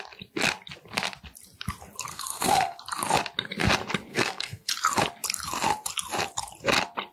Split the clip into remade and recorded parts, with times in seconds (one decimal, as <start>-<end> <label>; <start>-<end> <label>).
0.0-2.1 recorded; 2.1-2.8 remade; 2.8-4.1 recorded; 4.1-4.7 remade; 4.7-7.1 recorded